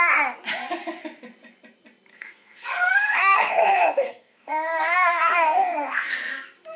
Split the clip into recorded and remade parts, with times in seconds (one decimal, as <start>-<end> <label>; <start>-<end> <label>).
0.0-2.1 recorded; 2.1-6.1 remade; 6.1-6.8 recorded